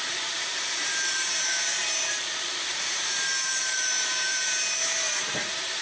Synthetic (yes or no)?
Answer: yes